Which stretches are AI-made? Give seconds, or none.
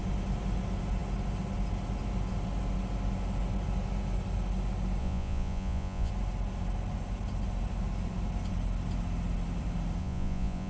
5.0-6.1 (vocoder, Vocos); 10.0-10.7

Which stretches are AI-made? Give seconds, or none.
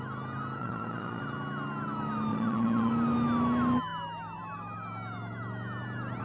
0.6-1.2 (vocoder, Vocos); 2.3-2.9